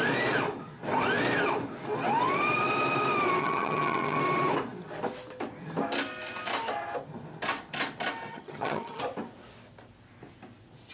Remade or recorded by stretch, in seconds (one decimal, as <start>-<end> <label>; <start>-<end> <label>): 0.0-3.4 recorded; 3.4-4.2 remade; 4.2-8.3 recorded; 8.3-9.0 remade; 9.0-10.9 recorded